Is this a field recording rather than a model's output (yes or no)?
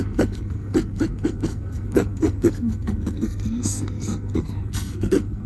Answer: no